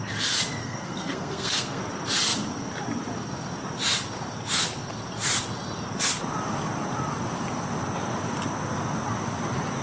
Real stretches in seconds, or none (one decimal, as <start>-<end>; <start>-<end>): 0.0-0.6; 1.8-9.8